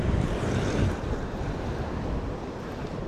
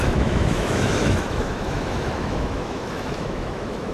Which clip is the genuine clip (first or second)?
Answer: first